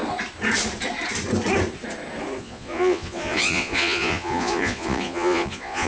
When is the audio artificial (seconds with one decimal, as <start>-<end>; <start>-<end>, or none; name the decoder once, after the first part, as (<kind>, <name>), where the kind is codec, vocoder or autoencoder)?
2.4-5.9 (vocoder, Vocos)